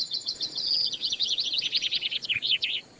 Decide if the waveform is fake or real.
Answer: fake